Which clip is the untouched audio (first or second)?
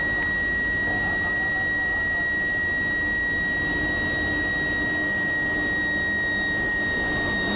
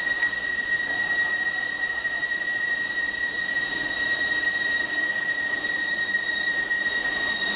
first